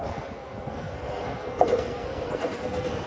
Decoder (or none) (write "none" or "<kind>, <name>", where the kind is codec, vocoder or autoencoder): codec, SNAC